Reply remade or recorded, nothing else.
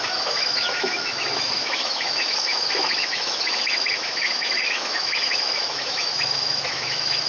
remade